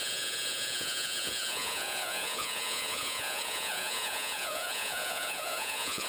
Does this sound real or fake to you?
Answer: fake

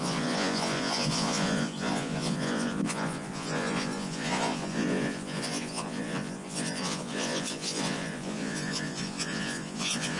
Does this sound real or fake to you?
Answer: fake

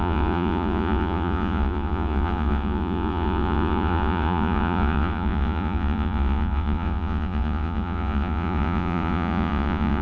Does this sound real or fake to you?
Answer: fake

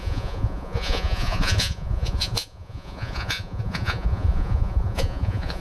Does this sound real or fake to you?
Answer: fake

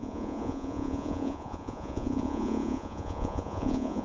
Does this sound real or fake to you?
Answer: fake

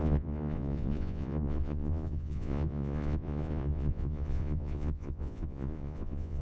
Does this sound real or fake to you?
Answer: fake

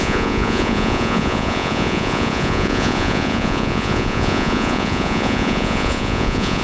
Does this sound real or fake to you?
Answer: fake